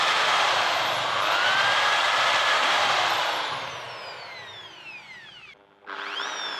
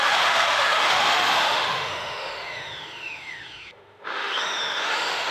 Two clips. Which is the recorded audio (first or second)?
first